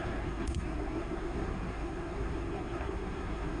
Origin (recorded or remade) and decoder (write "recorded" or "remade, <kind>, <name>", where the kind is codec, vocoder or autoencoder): remade, codec, SNAC